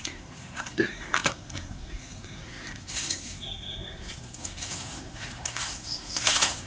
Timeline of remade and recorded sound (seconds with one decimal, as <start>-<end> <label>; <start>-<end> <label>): 0.0-6.7 remade